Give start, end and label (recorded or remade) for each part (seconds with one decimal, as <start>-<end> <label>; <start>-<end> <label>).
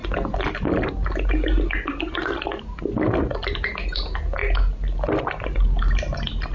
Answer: 0.0-6.5 recorded